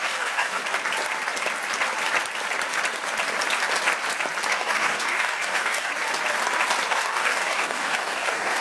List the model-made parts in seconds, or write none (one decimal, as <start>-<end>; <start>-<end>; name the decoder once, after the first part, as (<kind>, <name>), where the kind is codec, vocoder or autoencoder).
0.0-0.6 (codec, DAC); 4.5-5.9; 6.9-8.6